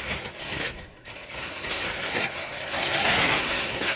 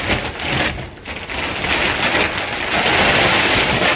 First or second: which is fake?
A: first